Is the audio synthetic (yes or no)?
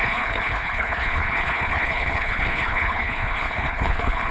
yes